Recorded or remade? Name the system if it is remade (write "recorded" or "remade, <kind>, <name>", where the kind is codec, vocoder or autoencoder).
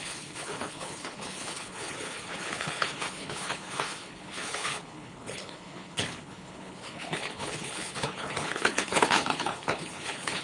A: remade, codec, HILCodec